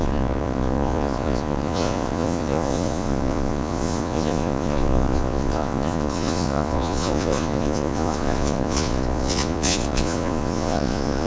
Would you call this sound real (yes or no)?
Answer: no